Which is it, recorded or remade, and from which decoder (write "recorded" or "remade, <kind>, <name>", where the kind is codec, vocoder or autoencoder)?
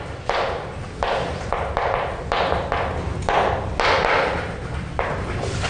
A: recorded